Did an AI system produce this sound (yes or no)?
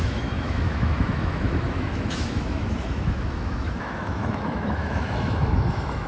yes